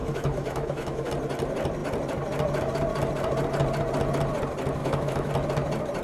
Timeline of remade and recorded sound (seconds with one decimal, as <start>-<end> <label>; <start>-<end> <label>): 0.0-1.1 remade; 1.1-4.8 recorded; 4.8-5.3 remade; 5.3-6.0 recorded